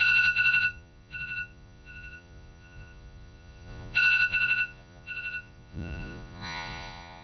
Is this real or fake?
fake